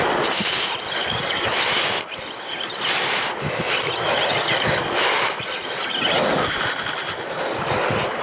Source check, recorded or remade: recorded